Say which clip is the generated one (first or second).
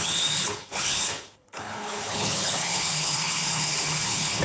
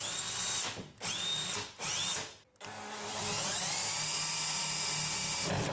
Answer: first